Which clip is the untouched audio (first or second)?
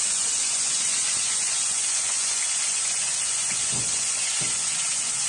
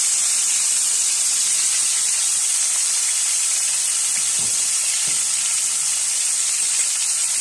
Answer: second